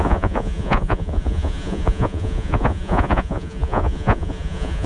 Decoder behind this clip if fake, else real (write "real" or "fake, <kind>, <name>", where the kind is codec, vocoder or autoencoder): fake, vocoder, Vocos